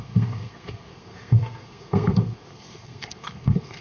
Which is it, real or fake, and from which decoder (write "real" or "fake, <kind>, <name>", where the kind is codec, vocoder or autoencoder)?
fake, codec, SNAC